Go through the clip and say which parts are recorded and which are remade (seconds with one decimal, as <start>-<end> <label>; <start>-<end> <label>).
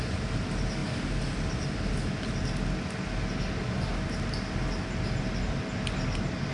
0.0-6.5 recorded